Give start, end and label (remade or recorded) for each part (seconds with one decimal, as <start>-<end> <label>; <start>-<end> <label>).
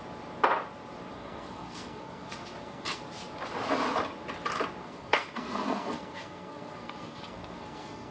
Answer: 0.0-1.1 recorded; 1.1-3.0 remade; 3.0-4.8 recorded; 4.8-8.1 remade